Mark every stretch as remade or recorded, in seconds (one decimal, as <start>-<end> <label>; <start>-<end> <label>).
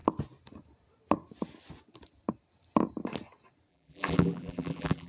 0.0-3.7 recorded; 3.7-5.1 remade